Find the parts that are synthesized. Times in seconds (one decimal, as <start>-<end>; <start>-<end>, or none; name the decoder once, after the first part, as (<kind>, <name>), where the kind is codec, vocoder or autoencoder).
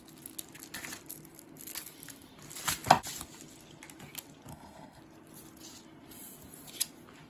4.5-5.0 (codec, SNAC)